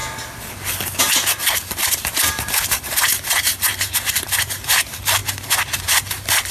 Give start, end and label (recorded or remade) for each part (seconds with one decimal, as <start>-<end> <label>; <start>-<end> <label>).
0.0-1.0 recorded; 1.0-5.2 remade; 5.2-5.8 recorded; 5.8-6.5 remade